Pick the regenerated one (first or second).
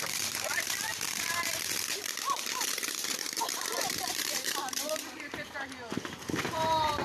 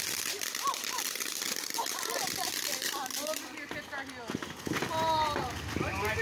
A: first